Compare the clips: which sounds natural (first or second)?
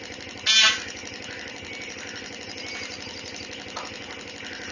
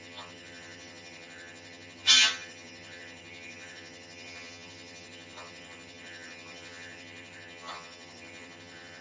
first